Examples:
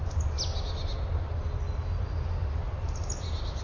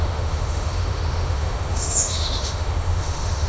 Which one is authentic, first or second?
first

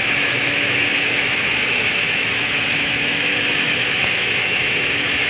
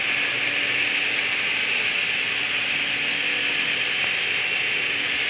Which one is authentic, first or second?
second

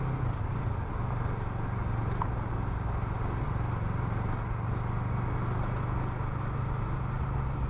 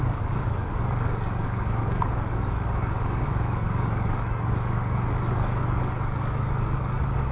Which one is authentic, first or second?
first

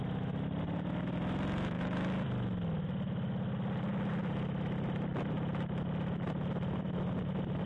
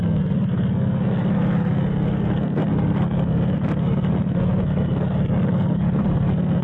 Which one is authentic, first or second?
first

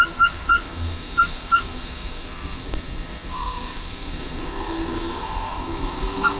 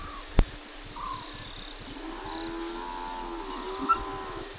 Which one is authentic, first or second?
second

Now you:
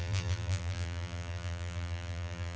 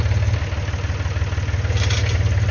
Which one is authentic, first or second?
second